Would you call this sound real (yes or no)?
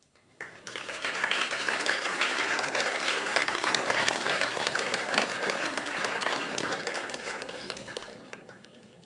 no